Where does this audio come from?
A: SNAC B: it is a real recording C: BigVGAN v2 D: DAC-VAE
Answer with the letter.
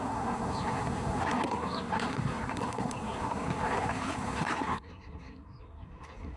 A